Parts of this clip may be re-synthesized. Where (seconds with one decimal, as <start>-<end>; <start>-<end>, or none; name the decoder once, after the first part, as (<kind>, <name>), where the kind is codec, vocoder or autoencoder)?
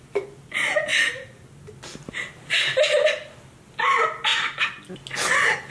none